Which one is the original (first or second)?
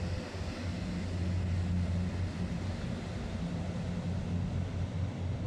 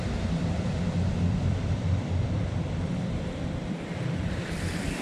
first